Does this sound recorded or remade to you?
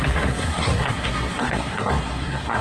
remade